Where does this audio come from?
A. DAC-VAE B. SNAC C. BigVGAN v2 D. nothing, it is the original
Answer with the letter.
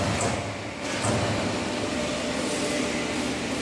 D